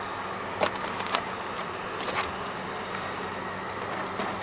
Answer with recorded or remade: recorded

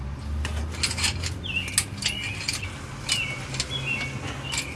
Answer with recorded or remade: recorded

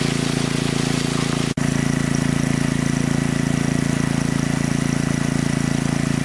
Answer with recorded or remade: recorded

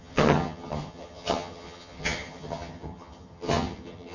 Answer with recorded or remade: remade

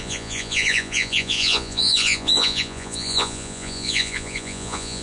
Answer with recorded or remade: remade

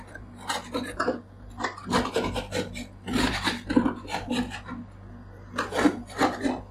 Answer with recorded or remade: recorded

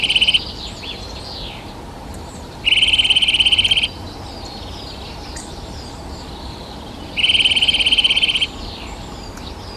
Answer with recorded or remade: recorded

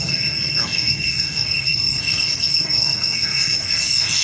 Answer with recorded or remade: remade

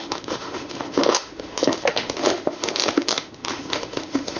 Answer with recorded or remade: remade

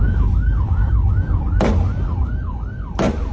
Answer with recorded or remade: recorded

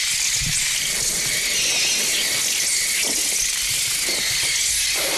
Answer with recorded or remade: recorded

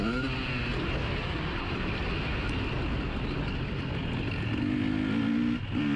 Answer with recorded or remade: recorded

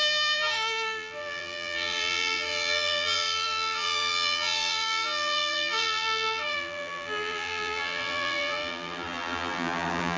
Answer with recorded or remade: remade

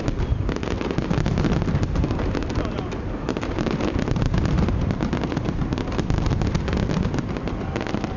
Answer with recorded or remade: recorded